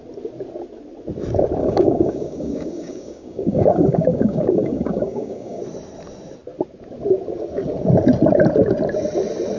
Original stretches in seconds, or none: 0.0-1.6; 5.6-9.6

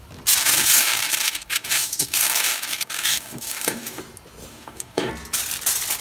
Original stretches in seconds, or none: 0.0-0.4; 4.0-4.5; 5.1-6.0